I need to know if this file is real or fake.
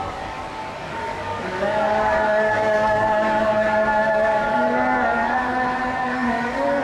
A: fake